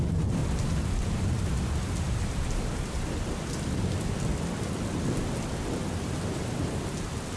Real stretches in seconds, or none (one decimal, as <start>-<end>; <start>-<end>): 0.0-7.4